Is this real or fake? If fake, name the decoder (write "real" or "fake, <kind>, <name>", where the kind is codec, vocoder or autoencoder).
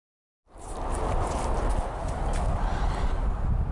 real